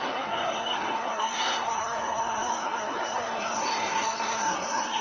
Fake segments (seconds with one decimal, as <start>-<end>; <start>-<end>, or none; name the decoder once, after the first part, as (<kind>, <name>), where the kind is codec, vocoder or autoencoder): 0.0-5.0 (codec, SNAC)